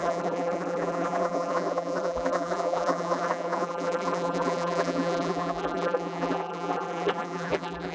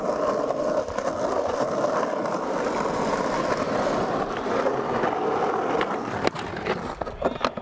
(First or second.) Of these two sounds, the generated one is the first